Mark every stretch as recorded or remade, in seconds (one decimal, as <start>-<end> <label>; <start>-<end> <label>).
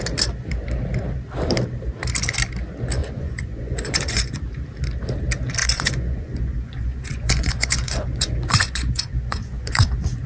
0.0-3.0 recorded; 3.0-4.4 remade; 4.4-5.6 recorded; 5.6-9.9 remade; 9.9-10.3 recorded